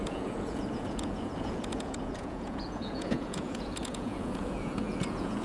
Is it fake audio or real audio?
fake